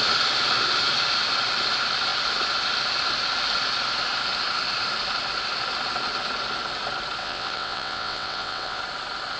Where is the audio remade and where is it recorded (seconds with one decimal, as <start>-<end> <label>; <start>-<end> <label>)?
0.0-7.2 recorded; 7.2-8.8 remade; 8.8-9.4 recorded